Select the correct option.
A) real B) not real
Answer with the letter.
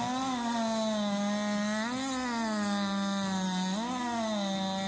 A